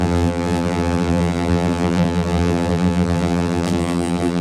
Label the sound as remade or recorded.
remade